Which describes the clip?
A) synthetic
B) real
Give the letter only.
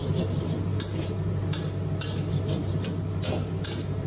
B